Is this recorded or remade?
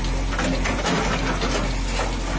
recorded